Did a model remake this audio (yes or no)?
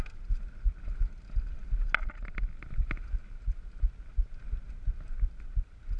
no